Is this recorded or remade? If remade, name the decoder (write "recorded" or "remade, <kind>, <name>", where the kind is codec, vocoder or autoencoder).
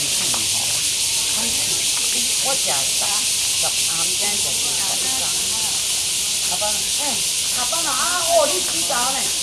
recorded